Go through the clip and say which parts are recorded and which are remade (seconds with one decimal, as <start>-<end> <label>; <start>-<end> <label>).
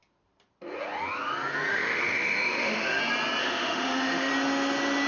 0.0-1.7 recorded; 1.7-3.0 remade; 3.0-3.4 recorded; 3.4-4.3 remade; 4.3-5.1 recorded